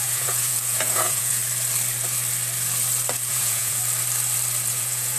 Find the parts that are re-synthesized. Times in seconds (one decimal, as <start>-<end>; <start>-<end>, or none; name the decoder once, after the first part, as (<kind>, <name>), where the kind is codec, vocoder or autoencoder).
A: 0.0-1.4 (vocoder, Vocos); 3.3-3.8; 4.7-5.2